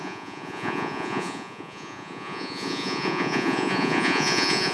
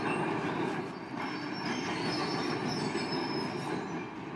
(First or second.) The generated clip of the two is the first